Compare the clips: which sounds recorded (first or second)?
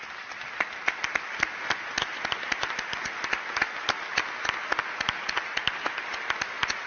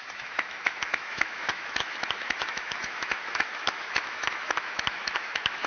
first